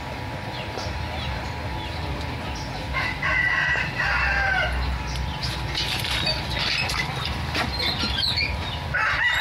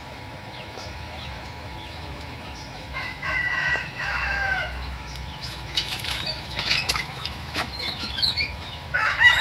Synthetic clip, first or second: second